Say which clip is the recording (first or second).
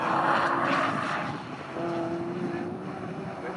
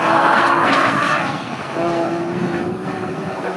first